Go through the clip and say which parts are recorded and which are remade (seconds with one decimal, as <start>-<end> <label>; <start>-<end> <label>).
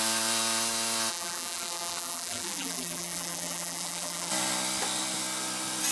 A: 0.0-1.1 recorded; 1.1-4.3 remade; 4.3-5.9 recorded